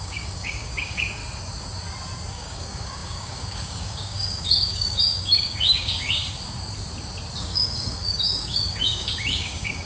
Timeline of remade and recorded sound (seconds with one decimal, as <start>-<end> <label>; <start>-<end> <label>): 0.0-1.2 remade; 1.2-2.3 recorded; 2.3-6.2 remade; 6.2-7.4 recorded; 7.4-9.9 remade